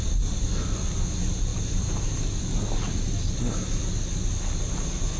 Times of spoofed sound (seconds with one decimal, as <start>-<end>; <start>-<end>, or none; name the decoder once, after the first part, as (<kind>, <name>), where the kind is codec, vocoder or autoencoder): none